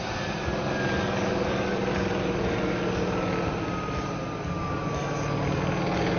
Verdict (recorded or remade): recorded